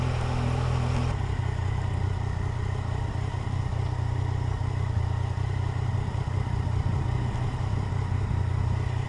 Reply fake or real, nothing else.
real